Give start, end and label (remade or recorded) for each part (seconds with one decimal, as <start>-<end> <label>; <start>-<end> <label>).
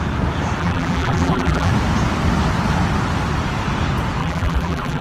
0.0-0.6 recorded; 0.6-1.7 remade; 1.7-4.2 recorded; 4.2-5.0 remade